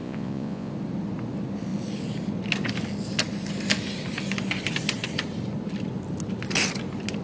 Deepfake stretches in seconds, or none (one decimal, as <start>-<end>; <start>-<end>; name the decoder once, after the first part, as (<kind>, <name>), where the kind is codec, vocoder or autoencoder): 0.0-0.7 (vocoder, Vocos)